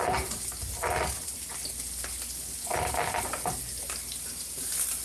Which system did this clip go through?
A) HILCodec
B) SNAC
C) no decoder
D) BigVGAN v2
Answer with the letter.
C